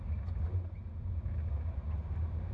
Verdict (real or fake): real